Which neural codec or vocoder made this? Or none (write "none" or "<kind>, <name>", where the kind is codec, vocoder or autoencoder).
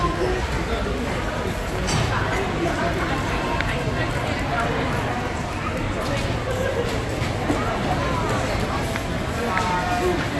none